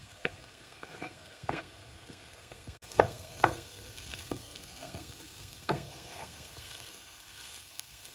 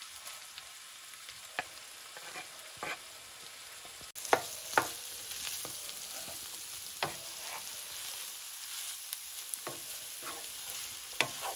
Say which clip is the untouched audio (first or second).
second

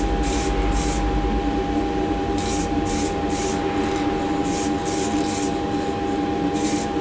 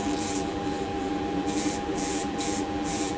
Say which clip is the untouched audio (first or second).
first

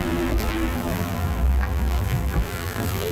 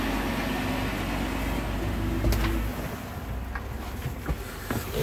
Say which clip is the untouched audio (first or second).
second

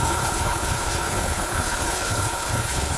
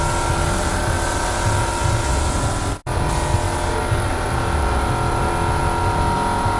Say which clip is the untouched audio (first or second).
second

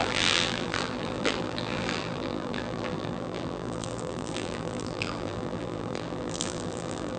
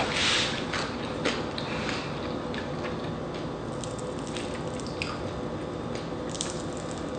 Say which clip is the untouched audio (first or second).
second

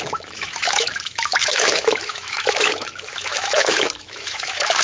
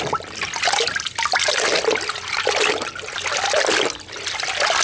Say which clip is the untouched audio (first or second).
second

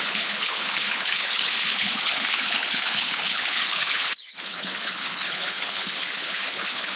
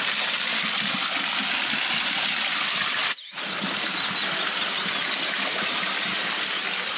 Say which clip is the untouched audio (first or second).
second